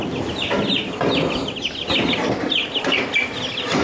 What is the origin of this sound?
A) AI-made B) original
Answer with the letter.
B